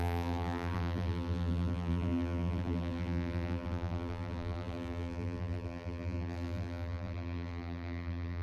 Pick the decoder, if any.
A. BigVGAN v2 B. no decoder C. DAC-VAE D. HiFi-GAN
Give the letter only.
A